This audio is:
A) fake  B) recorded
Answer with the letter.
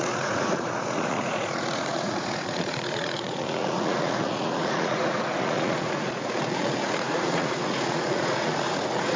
A